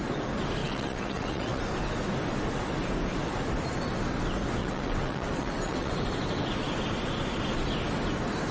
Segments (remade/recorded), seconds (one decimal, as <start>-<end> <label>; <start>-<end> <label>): 0.0-0.6 recorded; 0.6-1.6 remade; 1.6-4.6 recorded; 4.6-5.9 remade; 5.9-8.5 recorded